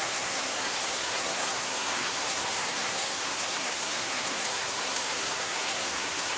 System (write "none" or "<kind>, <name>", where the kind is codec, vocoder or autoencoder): codec, SNAC